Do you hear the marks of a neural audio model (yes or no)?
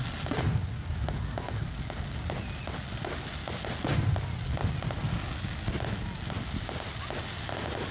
no